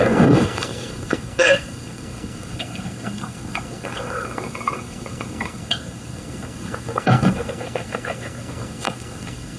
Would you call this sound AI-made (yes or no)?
yes